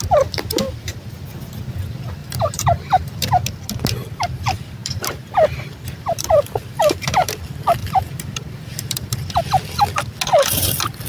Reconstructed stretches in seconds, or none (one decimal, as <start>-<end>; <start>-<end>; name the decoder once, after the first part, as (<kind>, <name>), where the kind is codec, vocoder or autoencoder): 2.2-3.3 (vocoder, BigVGAN v2); 4.8-7.3; 7.8-9.4